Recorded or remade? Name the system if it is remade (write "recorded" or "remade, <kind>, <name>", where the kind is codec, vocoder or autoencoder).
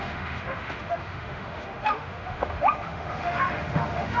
remade, autoencoder, DAC-VAE